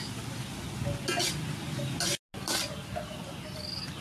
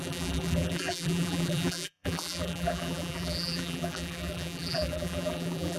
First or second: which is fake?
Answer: second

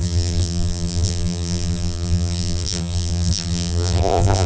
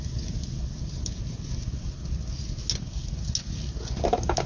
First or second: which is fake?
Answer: first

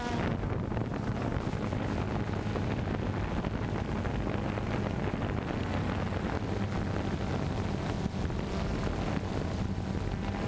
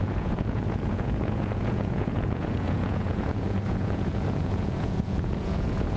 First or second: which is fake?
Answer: second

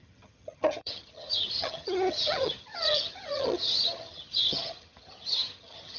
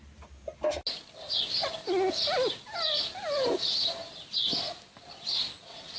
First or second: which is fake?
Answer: first